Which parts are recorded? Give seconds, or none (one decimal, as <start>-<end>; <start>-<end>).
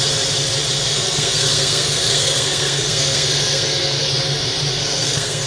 0.0-0.8; 4.1-4.7